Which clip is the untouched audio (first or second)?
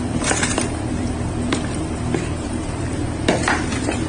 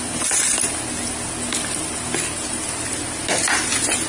second